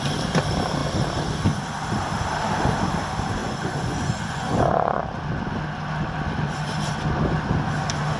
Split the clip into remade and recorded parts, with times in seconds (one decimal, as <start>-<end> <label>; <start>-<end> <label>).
0.0-3.4 recorded; 3.4-5.0 remade; 5.0-8.2 recorded